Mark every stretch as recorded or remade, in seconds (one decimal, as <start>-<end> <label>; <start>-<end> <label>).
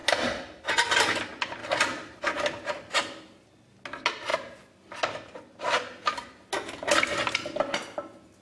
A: 0.0-8.4 recorded